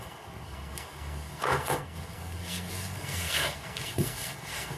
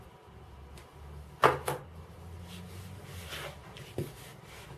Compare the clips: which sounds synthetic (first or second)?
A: first